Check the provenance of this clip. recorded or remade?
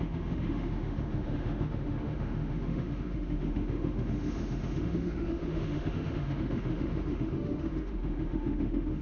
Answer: remade